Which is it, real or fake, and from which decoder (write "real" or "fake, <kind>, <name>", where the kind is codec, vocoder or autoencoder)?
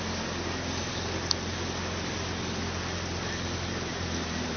real